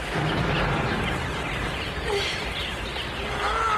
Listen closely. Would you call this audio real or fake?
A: real